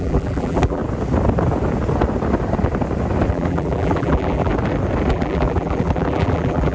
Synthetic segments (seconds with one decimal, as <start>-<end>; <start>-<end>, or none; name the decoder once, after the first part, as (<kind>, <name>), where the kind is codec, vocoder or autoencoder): 0.0-0.8 (vocoder, BigVGAN v2); 3.3-4.5; 5.1-6.7